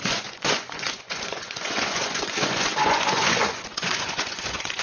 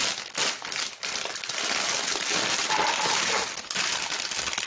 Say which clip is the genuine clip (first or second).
second